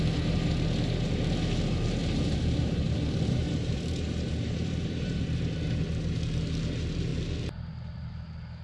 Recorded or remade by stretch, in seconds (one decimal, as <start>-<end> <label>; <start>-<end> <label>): 0.0-2.0 recorded; 2.0-5.4 remade; 5.4-8.6 recorded